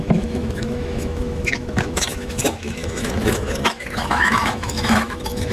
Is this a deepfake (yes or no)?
yes